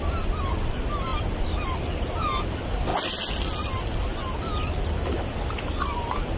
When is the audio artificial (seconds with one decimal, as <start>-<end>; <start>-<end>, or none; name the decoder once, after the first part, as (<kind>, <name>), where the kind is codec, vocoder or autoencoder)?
none